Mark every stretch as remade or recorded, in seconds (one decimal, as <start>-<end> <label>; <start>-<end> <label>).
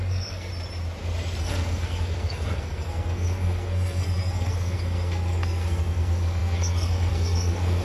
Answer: 0.0-0.5 remade; 0.5-1.4 recorded; 1.4-7.8 remade